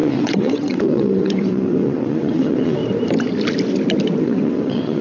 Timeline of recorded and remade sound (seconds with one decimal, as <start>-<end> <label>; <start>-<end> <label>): 0.0-2.8 remade; 2.8-4.2 recorded; 4.2-5.0 remade